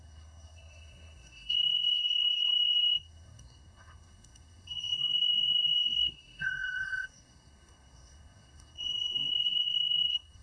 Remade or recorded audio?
remade